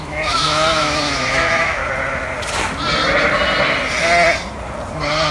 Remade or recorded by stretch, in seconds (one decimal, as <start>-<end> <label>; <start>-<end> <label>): 0.0-1.8 remade; 1.8-5.3 recorded